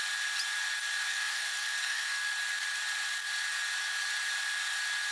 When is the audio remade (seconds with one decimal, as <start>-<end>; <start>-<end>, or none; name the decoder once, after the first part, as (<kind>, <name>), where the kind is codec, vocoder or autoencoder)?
1.1-2.3 (codec, SNAC)